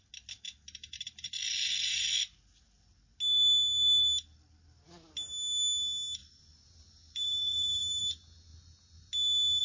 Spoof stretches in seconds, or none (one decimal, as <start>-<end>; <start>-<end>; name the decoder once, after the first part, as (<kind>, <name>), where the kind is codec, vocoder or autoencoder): 6.2-8.0 (vocoder, BigVGAN v2)